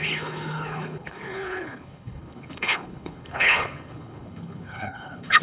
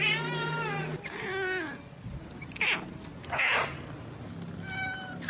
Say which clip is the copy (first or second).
first